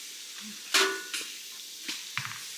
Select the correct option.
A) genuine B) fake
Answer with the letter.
A